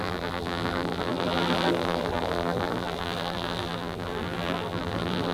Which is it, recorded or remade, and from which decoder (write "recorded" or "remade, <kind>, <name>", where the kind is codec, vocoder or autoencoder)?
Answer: remade, vocoder, BigVGAN v2